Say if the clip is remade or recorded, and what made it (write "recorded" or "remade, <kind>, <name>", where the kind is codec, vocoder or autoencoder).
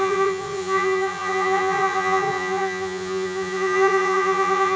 remade, vocoder, Vocos